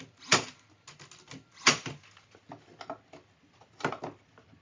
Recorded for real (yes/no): yes